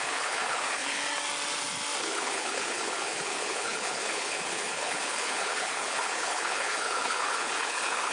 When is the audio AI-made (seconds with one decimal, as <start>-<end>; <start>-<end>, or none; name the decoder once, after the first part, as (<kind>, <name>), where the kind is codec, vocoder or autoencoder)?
0.0-1.0 (codec, HILCodec); 2.0-8.1